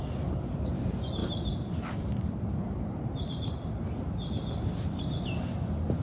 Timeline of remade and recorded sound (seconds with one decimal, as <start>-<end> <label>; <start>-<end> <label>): 0.0-1.2 recorded; 1.2-3.7 remade; 3.7-6.0 recorded